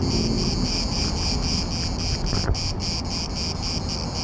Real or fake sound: real